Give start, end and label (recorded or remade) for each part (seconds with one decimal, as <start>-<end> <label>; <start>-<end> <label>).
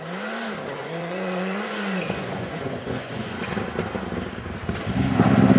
0.0-0.8 recorded; 0.8-3.5 remade; 3.5-5.6 recorded